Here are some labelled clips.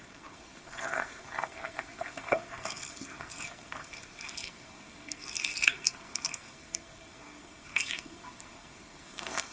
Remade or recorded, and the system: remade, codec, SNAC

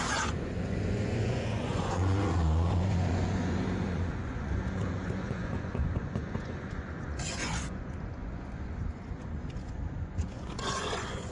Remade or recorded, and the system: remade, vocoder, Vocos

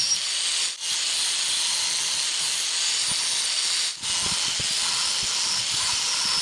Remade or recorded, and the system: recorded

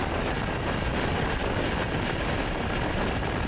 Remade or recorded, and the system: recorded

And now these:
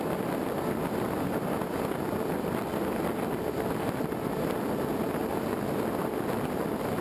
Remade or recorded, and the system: recorded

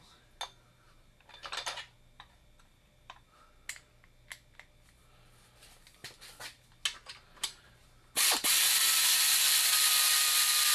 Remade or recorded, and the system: recorded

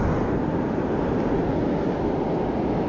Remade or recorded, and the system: recorded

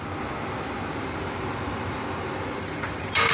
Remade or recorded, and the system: recorded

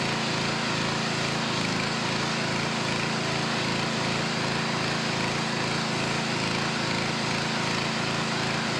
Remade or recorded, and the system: recorded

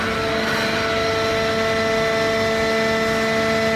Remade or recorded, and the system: recorded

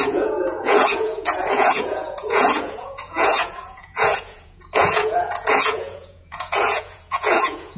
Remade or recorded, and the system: remade, vocoder, Vocos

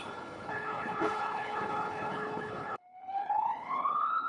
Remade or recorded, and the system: remade, codec, HILCodec